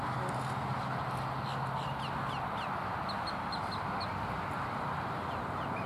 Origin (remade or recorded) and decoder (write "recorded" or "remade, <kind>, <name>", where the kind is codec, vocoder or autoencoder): recorded